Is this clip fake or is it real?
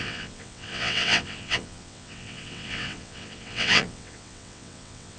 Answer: fake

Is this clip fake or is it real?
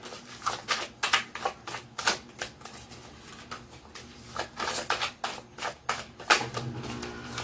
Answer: real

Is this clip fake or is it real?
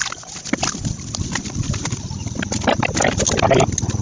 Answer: real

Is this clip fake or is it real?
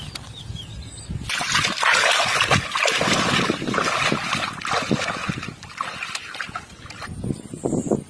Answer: real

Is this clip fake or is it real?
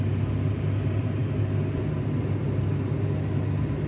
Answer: real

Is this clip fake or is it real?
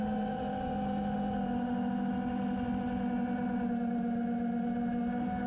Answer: real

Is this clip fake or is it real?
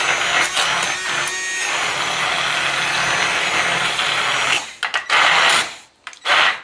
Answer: real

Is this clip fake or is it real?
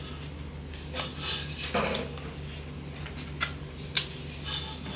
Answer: real